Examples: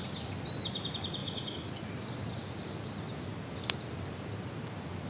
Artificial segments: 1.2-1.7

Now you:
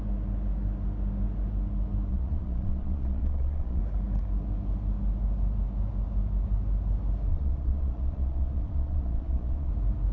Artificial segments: 2.1-3.8; 7.3-9.7